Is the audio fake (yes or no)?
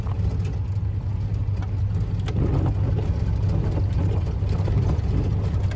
no